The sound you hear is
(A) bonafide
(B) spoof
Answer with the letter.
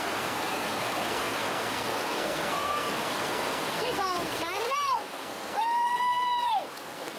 B